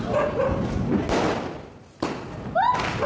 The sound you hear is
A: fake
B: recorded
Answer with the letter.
B